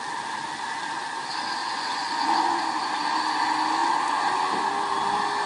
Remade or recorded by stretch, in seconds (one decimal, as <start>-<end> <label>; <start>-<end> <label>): 0.0-1.6 recorded; 1.6-2.6 remade; 2.6-5.5 recorded